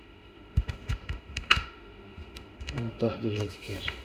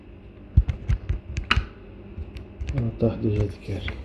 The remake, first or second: first